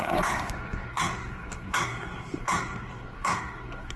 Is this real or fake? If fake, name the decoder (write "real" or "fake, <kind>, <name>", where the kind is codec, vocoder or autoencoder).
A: fake, codec, SNAC